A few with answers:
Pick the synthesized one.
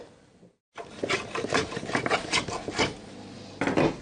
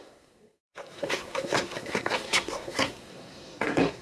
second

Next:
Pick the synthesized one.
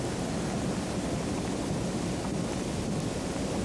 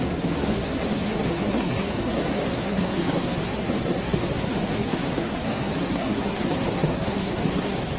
second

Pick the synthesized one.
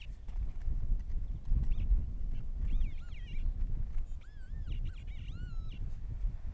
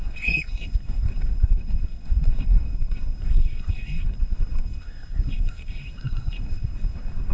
second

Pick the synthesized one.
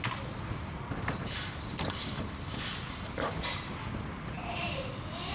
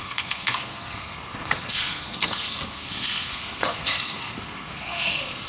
second